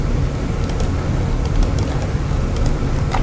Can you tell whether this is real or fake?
real